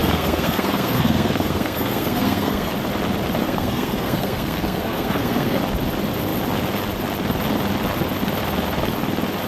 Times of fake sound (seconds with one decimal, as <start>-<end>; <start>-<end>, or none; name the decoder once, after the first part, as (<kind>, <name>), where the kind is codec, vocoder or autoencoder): 0.0-2.7 (codec, SNAC); 3.4-5.6